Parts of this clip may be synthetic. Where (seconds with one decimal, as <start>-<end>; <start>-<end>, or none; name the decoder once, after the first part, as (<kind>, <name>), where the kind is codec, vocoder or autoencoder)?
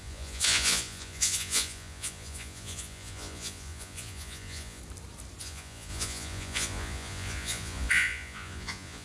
0.0-4.8 (vocoder, Vocos); 5.4-9.0